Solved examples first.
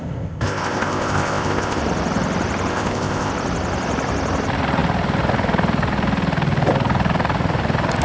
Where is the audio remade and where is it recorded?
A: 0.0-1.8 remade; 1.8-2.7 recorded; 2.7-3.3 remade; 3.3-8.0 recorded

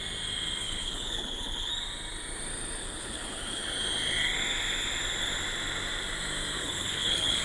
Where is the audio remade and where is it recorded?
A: 0.0-0.6 recorded; 0.6-1.7 remade; 1.7-2.8 recorded; 2.8-3.6 remade; 3.6-6.6 recorded; 6.6-7.4 remade

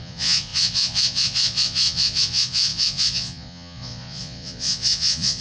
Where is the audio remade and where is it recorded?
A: 0.0-5.4 remade

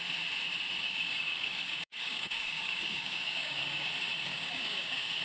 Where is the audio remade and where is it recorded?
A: 0.0-0.8 recorded; 0.8-3.9 remade; 3.9-4.3 recorded; 4.3-5.2 remade